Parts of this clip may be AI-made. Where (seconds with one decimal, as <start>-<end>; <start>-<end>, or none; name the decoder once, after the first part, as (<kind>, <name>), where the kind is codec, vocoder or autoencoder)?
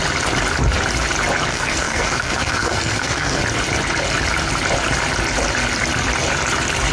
1.5-3.4 (codec, SNAC)